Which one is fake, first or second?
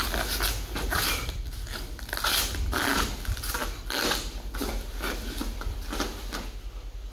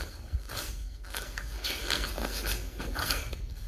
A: second